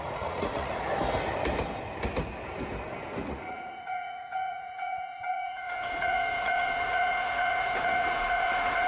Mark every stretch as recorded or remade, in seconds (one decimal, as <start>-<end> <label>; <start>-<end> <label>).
0.0-0.9 remade; 0.9-3.3 recorded; 3.3-8.9 remade